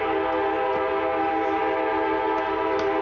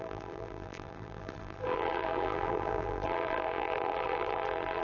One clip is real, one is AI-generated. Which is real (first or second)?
first